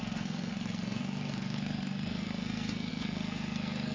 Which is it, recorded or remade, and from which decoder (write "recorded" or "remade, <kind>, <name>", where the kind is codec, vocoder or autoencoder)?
remade, codec, SNAC